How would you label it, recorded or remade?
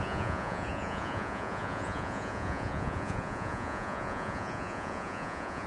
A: remade